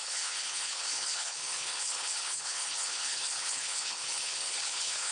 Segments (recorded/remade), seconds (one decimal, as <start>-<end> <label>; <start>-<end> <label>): 0.0-5.1 remade